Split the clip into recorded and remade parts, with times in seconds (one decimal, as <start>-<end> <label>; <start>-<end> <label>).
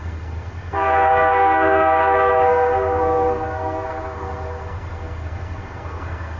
0.0-6.4 remade